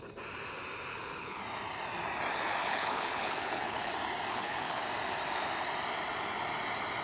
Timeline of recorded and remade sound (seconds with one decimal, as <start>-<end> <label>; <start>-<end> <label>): 0.0-0.9 recorded; 0.9-1.4 remade; 1.4-2.6 recorded; 2.6-3.9 remade; 3.9-4.3 recorded; 4.3-4.8 remade; 4.8-7.0 recorded